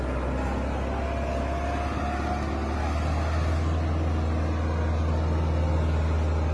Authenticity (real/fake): real